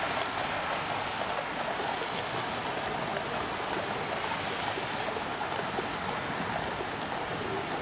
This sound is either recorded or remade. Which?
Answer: recorded